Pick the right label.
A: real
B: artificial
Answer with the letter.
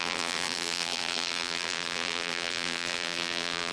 B